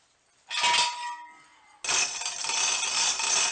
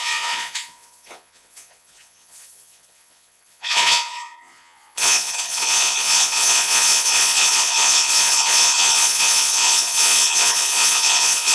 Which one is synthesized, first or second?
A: second